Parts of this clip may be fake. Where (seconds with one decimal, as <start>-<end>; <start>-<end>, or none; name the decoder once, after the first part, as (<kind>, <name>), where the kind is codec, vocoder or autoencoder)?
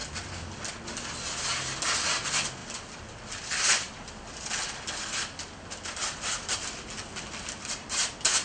none